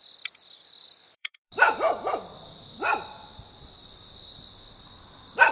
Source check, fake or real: fake